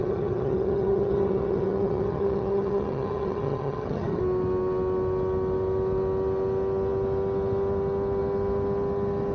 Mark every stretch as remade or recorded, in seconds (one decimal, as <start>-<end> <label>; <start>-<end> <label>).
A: 0.0-4.2 remade; 4.2-9.3 recorded